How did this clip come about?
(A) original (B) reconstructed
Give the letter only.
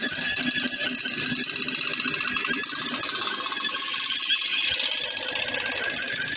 A